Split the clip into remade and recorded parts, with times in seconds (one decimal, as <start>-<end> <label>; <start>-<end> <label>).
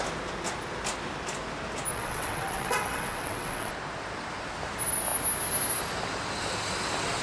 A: 0.0-1.9 recorded; 1.9-3.7 remade; 3.7-7.2 recorded